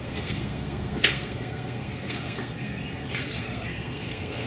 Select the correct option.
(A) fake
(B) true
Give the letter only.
A